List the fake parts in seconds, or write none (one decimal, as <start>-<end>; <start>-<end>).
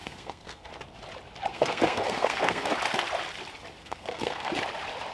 0.0-0.7; 1.5-2.7; 3.8-4.5